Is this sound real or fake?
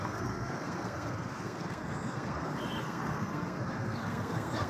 fake